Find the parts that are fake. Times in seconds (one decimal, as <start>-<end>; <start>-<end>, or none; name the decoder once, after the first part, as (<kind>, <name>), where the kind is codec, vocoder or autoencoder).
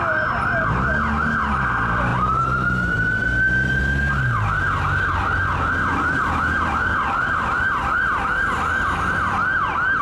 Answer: 2.1-3.8 (vocoder, BigVGAN v2)